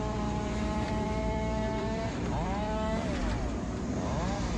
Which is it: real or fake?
fake